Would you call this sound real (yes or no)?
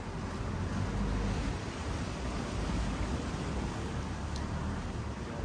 yes